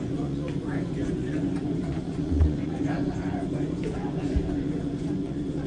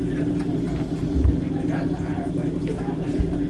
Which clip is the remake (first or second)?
first